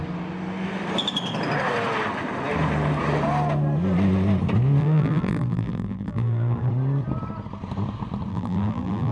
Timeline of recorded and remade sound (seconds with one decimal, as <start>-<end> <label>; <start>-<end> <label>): 0.0-4.8 recorded; 4.8-6.7 remade; 6.7-8.3 recorded; 8.3-9.1 remade